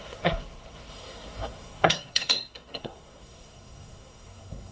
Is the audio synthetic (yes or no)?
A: yes